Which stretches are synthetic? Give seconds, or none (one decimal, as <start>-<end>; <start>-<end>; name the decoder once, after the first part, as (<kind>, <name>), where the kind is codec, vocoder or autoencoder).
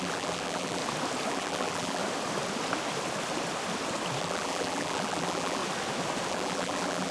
0.0-0.8 (vocoder, BigVGAN v2); 1.3-2.0; 4.2-5.6; 6.3-7.1